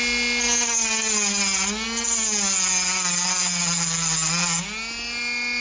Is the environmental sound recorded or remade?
recorded